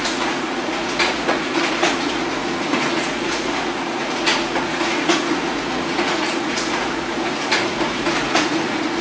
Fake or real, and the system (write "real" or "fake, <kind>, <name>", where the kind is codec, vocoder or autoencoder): fake, vocoder, Vocos